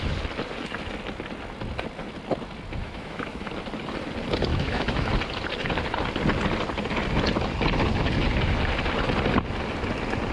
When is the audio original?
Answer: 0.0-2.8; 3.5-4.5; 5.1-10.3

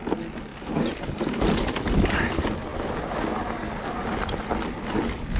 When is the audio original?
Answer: 0.0-5.4

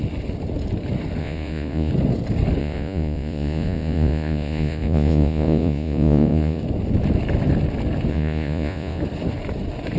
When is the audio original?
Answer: 0.0-1.2; 1.9-2.6; 6.6-8.1; 9.0-10.0

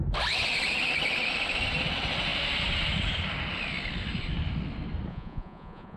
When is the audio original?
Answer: 0.0-5.1

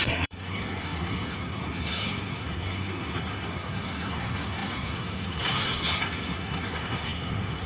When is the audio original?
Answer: none

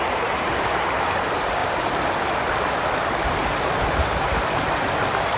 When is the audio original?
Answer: 1.6-3.8

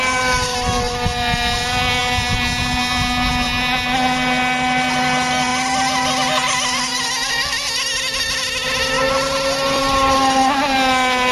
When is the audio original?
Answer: 0.0-11.3

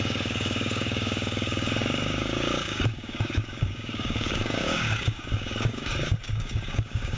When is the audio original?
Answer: none